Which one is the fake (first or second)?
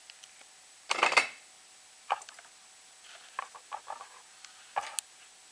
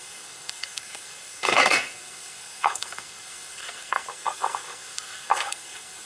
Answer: second